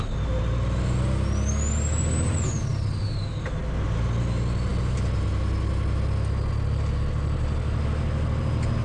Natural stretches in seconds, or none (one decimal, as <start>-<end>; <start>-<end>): 0.0-8.8